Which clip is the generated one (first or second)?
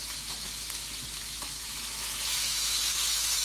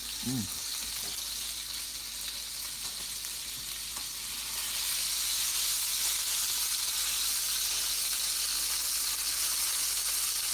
first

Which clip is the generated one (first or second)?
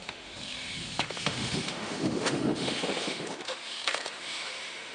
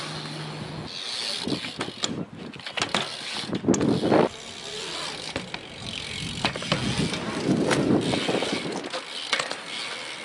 first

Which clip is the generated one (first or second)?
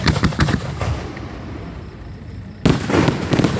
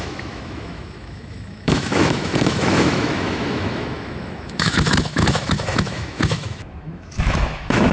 second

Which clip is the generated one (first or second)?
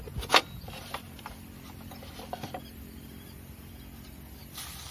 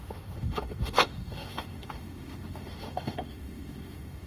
second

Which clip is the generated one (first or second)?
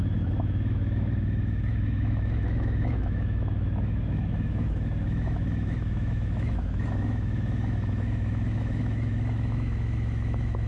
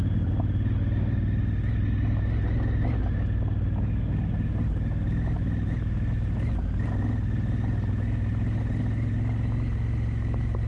first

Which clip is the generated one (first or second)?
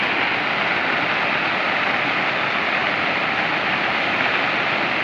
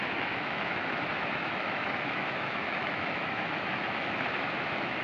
second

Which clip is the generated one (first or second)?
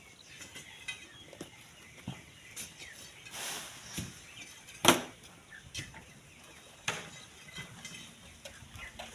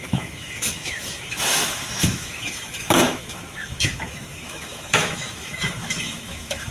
second